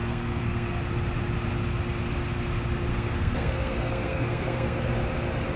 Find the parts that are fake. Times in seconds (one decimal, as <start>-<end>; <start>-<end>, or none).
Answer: 0.0-0.8; 2.9-4.9